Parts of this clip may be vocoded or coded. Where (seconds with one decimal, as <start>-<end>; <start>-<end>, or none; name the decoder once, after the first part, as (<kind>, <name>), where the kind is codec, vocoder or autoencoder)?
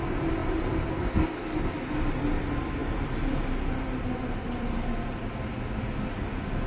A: none